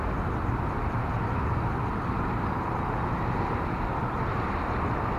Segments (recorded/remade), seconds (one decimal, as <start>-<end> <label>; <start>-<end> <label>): 0.0-5.2 recorded